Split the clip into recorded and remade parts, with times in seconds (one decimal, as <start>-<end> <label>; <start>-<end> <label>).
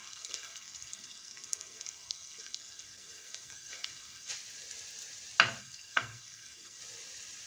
0.0-4.3 remade; 4.3-5.6 recorded; 5.6-6.8 remade; 6.8-7.5 recorded